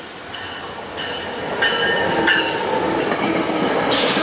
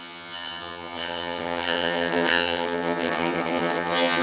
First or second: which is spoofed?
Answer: second